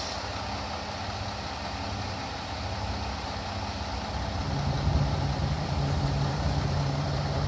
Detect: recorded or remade recorded